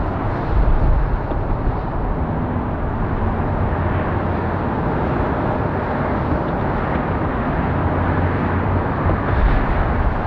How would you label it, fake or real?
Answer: real